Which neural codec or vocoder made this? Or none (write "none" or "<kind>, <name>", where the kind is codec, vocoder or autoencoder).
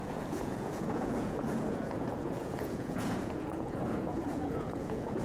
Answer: vocoder, Vocos